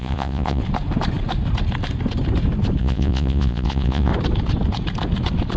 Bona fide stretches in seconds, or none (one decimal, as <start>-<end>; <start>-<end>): 0.6-2.8; 4.1-5.6